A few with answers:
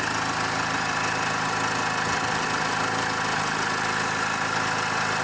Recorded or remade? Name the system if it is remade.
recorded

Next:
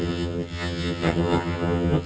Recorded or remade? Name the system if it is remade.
remade, vocoder, HiFi-GAN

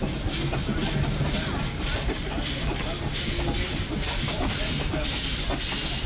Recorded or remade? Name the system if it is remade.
recorded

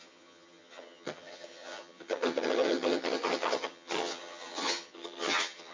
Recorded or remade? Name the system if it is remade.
remade, vocoder, HiFi-GAN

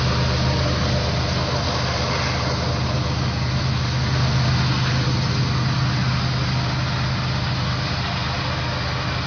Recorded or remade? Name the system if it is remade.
recorded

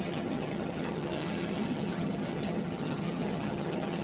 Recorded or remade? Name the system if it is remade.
remade, vocoder, HiFi-GAN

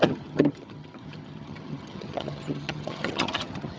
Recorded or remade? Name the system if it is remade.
remade, vocoder, HiFi-GAN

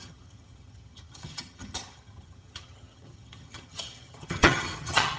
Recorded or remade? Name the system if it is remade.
remade, vocoder, HiFi-GAN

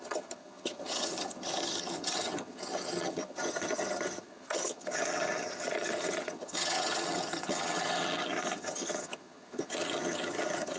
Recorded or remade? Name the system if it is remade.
remade, vocoder, HiFi-GAN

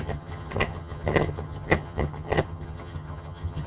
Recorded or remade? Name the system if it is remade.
remade, vocoder, HiFi-GAN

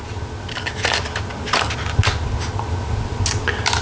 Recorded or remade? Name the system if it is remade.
recorded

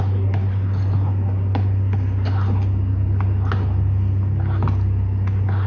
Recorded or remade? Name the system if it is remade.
recorded